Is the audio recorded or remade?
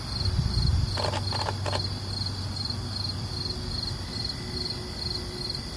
recorded